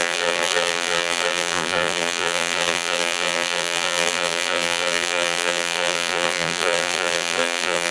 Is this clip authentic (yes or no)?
no